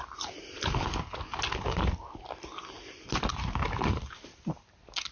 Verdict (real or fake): real